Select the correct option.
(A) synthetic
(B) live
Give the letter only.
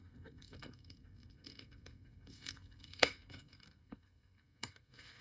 A